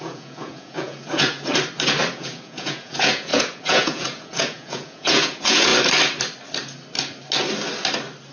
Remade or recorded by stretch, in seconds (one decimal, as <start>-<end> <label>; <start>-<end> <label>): 0.0-1.5 remade; 1.5-2.1 recorded; 2.1-5.7 remade; 5.7-8.3 recorded